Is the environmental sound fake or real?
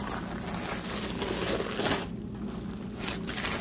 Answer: real